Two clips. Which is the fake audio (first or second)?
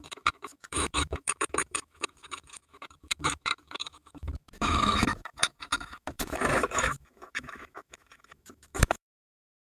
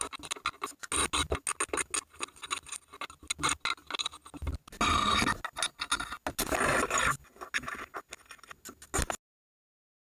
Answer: first